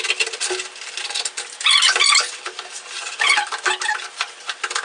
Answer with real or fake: real